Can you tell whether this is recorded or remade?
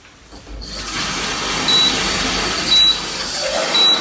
recorded